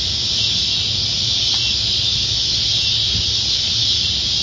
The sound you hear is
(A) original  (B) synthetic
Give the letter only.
A